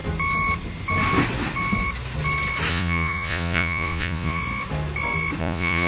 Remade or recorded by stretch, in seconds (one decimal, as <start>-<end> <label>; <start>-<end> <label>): 0.0-2.7 recorded; 2.7-4.4 remade; 4.4-5.4 recorded; 5.4-5.9 remade